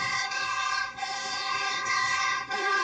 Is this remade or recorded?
remade